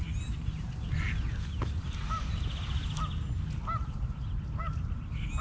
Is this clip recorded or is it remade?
recorded